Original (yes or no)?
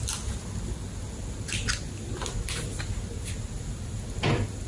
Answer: yes